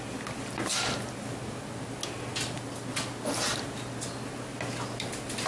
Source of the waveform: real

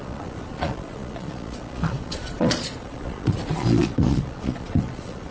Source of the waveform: fake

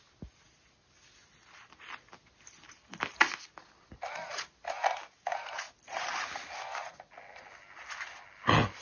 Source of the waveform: real